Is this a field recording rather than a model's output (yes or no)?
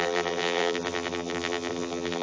no